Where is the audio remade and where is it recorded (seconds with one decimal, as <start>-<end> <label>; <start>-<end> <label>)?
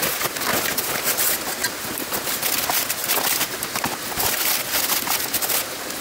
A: 0.0-6.0 recorded